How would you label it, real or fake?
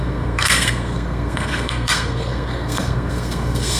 fake